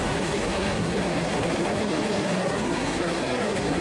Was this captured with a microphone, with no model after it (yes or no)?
no